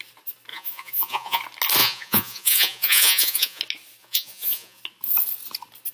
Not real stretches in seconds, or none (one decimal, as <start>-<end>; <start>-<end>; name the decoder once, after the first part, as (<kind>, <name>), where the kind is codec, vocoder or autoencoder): 0.5-1.4 (vocoder, Vocos); 1.8-3.6; 4.0-4.8